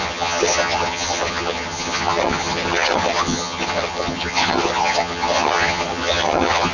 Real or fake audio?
fake